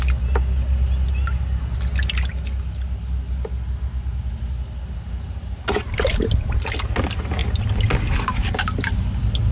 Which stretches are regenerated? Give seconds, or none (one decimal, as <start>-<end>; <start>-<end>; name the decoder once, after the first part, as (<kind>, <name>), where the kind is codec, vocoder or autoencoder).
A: none